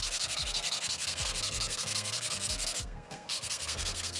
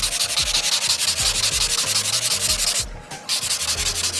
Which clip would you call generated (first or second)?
first